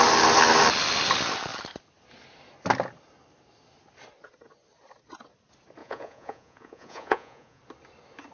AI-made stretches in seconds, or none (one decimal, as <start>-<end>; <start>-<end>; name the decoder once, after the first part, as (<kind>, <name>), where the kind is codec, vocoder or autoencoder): 5.8-7.6 (vocoder, Vocos)